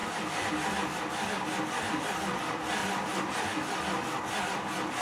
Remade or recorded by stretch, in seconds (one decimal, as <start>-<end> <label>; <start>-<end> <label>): 0.0-5.0 recorded